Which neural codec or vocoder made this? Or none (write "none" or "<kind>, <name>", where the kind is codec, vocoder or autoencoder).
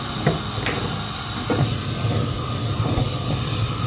none